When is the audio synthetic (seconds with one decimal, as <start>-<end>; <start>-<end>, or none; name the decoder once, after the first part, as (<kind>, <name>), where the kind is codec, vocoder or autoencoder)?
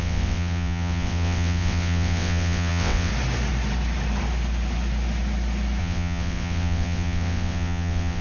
0.0-3.1 (vocoder, WaveNeXt); 5.8-8.2